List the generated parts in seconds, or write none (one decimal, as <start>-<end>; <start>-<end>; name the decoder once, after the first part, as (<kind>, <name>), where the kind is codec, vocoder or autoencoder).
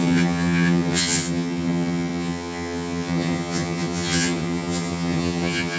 0.0-5.8 (vocoder, HiFi-GAN)